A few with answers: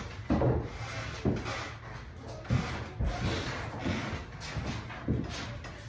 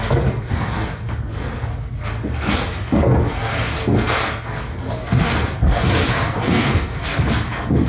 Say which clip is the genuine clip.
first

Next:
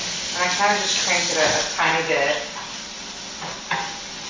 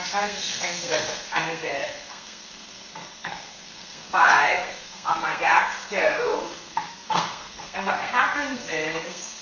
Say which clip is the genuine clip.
first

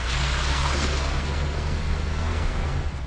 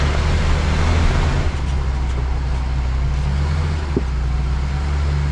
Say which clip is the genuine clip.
second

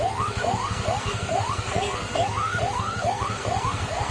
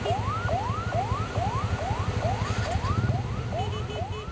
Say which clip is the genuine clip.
second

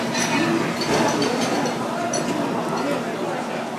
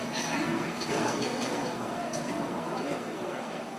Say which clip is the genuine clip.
first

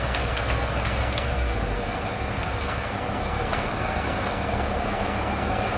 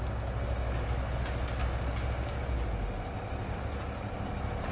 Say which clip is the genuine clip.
second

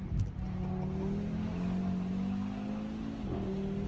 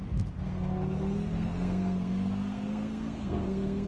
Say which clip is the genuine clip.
first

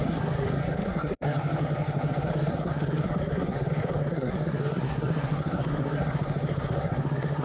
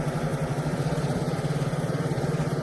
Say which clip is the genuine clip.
second